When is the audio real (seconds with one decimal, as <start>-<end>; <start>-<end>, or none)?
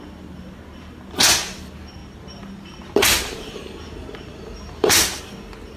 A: 0.0-2.0; 5.2-5.8